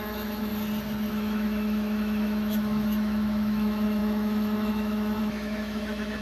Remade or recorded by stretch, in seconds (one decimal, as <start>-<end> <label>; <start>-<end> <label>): 0.0-0.5 remade; 0.5-1.1 recorded; 1.1-6.2 remade